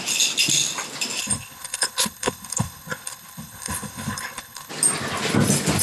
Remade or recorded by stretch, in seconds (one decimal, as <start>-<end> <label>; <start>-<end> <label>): 0.0-1.2 recorded; 1.2-4.7 remade; 4.7-5.8 recorded